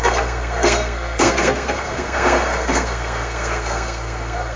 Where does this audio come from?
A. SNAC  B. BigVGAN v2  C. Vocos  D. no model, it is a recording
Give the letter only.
A